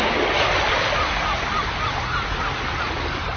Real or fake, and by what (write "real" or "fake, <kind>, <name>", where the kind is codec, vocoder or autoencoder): real